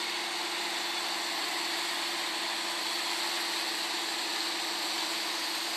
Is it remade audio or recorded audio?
recorded